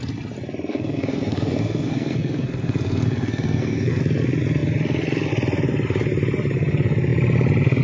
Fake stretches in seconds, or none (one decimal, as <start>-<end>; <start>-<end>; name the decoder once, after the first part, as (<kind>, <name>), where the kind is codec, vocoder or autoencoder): 0.7-4.0 (codec, SNAC)